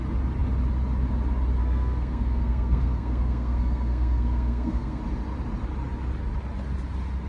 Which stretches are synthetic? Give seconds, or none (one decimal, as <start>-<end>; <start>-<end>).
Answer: 1.6-5.0